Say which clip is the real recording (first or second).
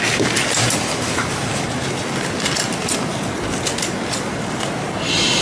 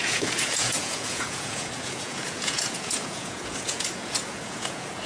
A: first